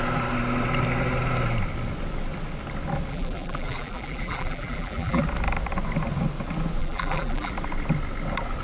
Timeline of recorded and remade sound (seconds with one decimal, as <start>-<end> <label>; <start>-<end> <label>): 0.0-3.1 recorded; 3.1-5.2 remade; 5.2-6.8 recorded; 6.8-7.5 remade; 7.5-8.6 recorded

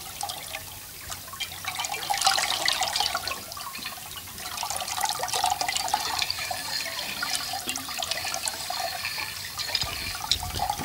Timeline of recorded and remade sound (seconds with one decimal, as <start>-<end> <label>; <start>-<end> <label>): 0.0-2.1 recorded; 2.1-5.3 remade; 5.3-5.9 recorded; 5.9-7.0 remade; 7.0-10.8 recorded

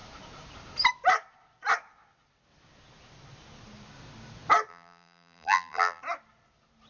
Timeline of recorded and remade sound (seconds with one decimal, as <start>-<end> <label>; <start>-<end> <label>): 0.0-4.7 recorded; 4.7-6.0 remade; 6.0-6.9 recorded

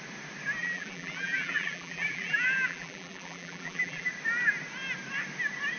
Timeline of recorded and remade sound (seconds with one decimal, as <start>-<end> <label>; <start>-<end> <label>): 0.0-0.6 recorded; 0.6-4.1 remade; 4.1-5.8 recorded